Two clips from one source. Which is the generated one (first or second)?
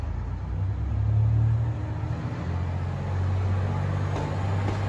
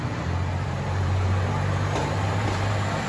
second